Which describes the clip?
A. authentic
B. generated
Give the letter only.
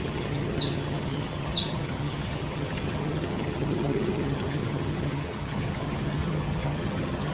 B